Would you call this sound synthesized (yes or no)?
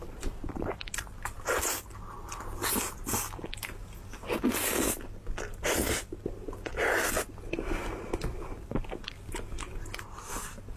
no